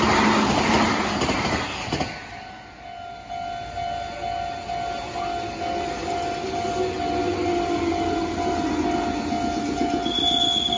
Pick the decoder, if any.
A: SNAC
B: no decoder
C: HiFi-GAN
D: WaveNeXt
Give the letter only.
B